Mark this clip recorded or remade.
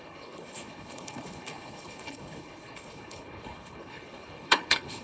remade